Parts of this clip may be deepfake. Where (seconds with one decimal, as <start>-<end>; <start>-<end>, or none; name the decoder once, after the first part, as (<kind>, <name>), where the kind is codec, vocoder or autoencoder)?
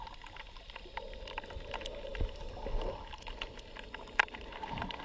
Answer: none